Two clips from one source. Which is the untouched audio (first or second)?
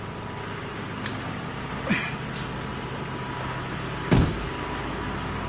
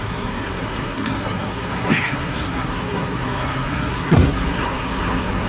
first